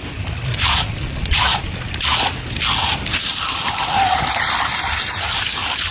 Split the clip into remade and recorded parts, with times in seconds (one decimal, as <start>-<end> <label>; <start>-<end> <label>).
0.0-0.5 recorded; 0.5-1.9 remade; 1.9-5.9 recorded